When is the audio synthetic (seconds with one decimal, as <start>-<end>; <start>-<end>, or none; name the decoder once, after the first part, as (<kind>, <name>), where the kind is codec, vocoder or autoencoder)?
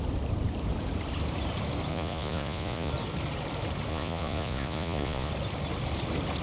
1.9-2.9 (vocoder, Vocos); 3.9-5.3